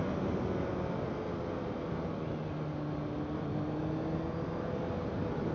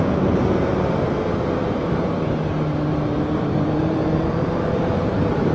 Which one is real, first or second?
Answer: first